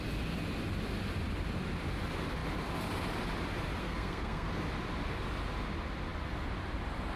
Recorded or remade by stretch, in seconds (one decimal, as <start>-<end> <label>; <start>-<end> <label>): 0.0-3.8 recorded; 3.8-4.5 remade; 4.5-7.2 recorded